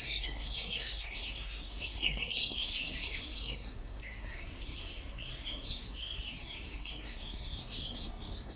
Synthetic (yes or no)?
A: yes